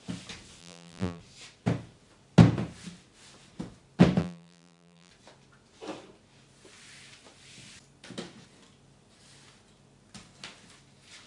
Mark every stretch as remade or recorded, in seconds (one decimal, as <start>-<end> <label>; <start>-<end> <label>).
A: 0.0-0.6 recorded; 0.6-1.2 remade; 1.2-4.2 recorded; 4.2-5.1 remade; 5.1-11.3 recorded